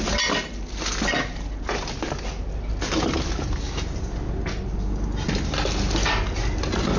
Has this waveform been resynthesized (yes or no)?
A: no